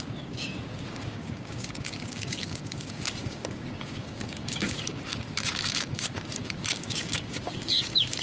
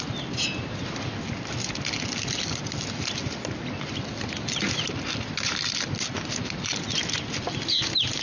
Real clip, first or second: second